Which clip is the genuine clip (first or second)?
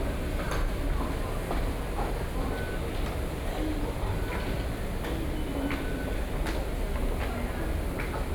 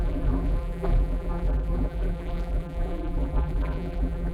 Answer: first